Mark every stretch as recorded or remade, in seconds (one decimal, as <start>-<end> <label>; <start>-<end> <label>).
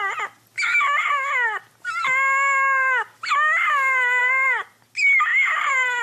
0.0-4.2 recorded; 4.2-4.7 remade; 4.7-5.3 recorded; 5.3-6.0 remade